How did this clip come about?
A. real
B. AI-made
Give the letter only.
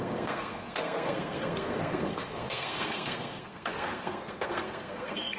B